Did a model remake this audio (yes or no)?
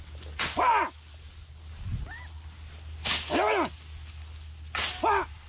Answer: no